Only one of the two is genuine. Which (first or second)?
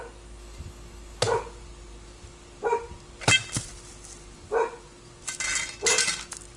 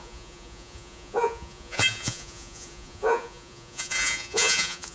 first